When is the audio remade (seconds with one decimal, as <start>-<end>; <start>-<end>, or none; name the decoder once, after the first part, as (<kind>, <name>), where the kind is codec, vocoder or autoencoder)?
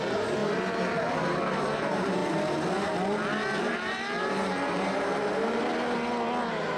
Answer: 0.0-2.2 (vocoder, BigVGAN v2); 3.6-5.6